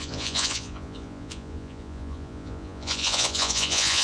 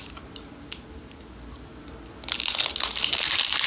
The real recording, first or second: second